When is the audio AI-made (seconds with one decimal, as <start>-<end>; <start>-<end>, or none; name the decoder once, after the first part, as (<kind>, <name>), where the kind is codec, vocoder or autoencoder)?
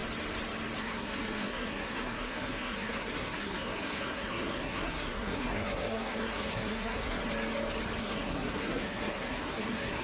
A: 0.8-7.2 (codec, SNAC); 8.0-10.0